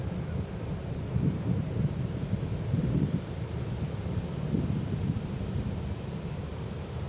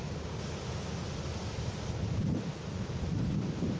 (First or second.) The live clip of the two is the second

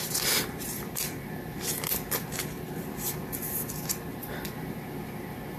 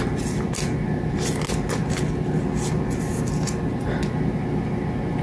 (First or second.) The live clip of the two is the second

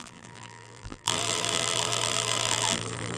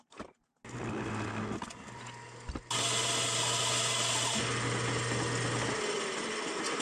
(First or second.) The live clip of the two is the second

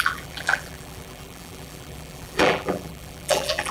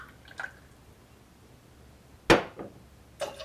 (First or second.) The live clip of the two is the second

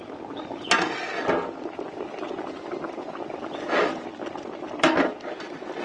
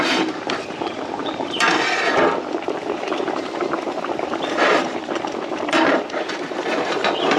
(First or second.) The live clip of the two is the first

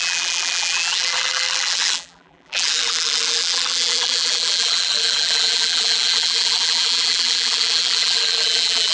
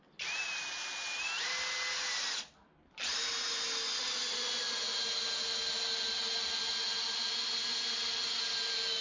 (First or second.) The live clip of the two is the second